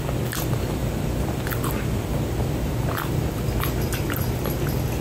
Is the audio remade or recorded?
recorded